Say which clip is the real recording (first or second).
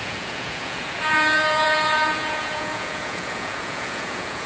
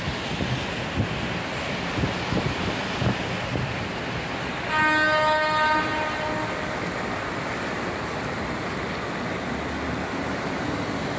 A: second